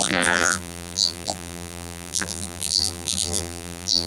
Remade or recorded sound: remade